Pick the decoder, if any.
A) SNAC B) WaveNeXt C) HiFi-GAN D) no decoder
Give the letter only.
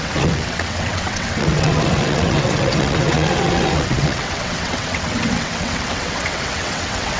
B